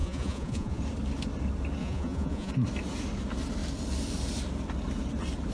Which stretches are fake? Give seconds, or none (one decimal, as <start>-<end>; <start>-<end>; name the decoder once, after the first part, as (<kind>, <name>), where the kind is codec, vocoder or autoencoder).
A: 0.0-0.8 (vocoder, Vocos); 1.8-2.5